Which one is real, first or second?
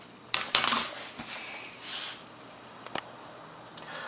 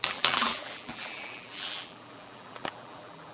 first